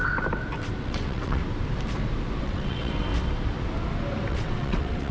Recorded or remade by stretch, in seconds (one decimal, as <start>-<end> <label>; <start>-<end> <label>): 0.0-0.8 recorded; 0.8-1.4 remade; 1.4-2.4 recorded; 2.4-3.1 remade; 3.1-4.3 recorded; 4.3-5.1 remade